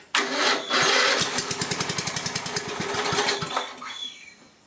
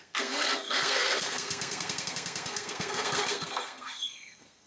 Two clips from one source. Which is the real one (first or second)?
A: first